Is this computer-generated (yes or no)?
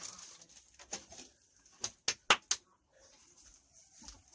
no